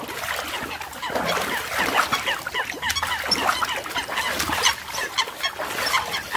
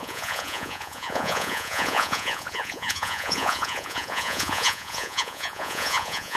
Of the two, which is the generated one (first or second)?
second